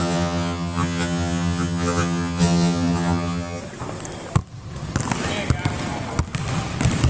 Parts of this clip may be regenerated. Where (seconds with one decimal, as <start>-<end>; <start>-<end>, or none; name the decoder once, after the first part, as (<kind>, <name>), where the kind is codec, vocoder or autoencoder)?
0.0-3.6 (vocoder, HiFi-GAN)